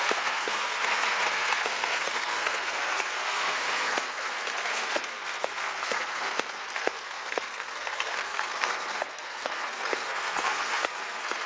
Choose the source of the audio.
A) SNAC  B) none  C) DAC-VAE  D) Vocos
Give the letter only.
A